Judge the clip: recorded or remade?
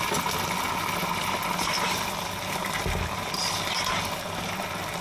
recorded